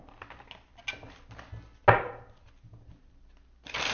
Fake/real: real